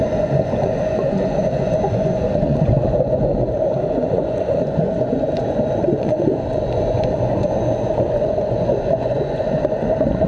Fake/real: fake